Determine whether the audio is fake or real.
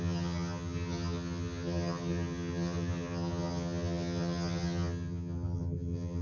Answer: fake